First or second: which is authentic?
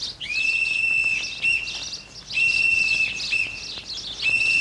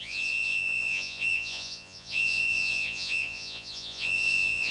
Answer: first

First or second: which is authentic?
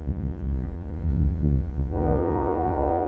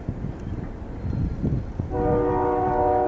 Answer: second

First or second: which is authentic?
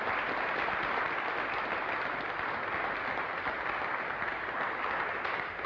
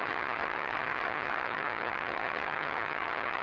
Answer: first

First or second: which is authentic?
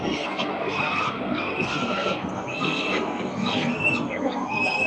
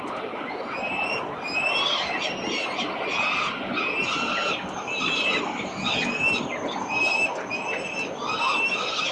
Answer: second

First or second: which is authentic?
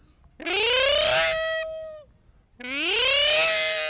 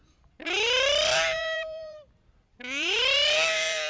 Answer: first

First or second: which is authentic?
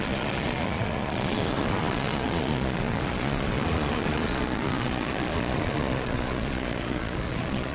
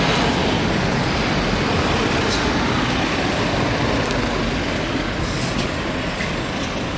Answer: second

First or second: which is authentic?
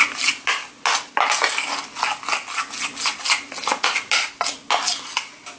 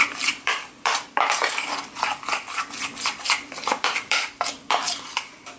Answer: first